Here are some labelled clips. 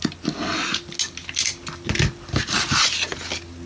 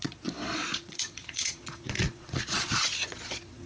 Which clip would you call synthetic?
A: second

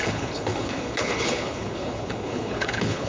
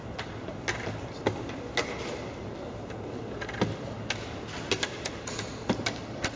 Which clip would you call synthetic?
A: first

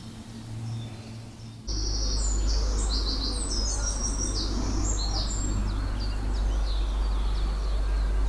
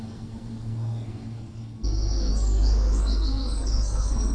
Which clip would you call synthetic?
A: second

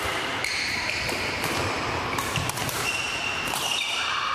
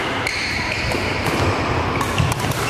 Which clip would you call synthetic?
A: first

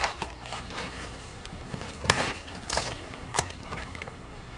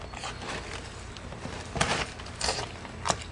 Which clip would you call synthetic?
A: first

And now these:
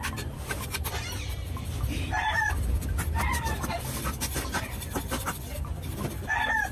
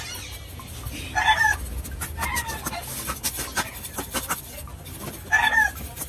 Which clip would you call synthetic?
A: first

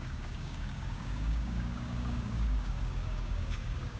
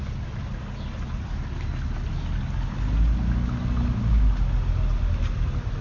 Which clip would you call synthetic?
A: first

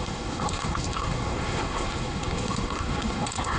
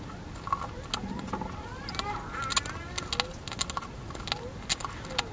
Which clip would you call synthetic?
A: first